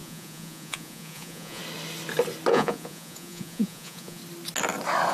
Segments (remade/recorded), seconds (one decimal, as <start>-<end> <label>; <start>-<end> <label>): 0.0-1.6 remade; 1.6-2.5 recorded; 2.5-4.2 remade; 4.2-5.1 recorded